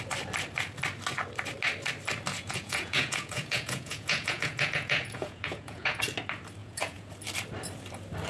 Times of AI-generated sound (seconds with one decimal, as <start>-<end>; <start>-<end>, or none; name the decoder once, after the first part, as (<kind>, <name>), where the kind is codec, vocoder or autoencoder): 2.3-6.0 (vocoder, Vocos); 6.6-7.1